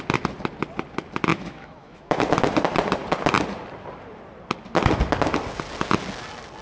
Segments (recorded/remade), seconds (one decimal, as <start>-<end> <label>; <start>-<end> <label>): 0.0-1.3 recorded; 1.3-2.2 remade; 2.2-6.6 recorded